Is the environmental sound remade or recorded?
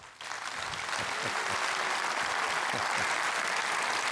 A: recorded